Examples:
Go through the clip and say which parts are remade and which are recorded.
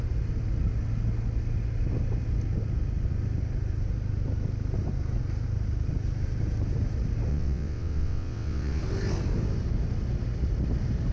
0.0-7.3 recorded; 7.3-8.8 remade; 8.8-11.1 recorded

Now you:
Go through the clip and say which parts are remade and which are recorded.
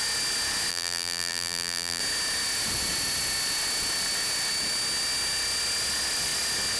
0.0-0.7 recorded; 0.7-2.0 remade; 2.0-6.8 recorded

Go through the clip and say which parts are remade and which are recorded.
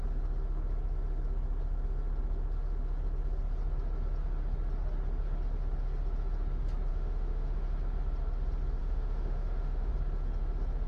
0.0-6.9 recorded; 6.9-7.7 remade; 7.7-8.8 recorded; 8.8-9.9 remade; 9.9-10.9 recorded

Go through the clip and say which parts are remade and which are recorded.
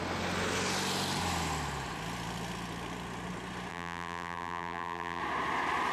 0.0-3.7 recorded; 3.7-5.2 remade; 5.2-5.9 recorded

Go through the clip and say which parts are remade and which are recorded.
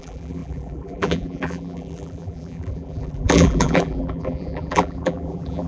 0.0-5.7 remade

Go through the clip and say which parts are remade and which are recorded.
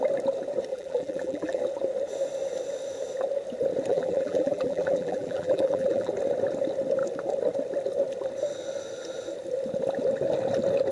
0.0-0.7 recorded; 0.7-1.6 remade; 1.6-3.9 recorded; 3.9-6.1 remade; 6.1-10.9 recorded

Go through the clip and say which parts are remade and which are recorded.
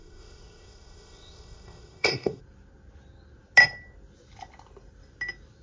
0.0-2.4 remade; 2.4-5.6 recorded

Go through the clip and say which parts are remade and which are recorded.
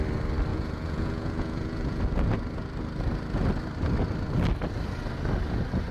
0.0-0.5 recorded; 0.5-2.0 remade; 2.0-5.9 recorded